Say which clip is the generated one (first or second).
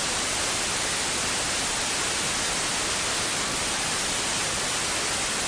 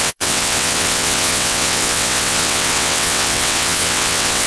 second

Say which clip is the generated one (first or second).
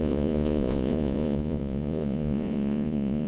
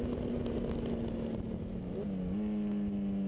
first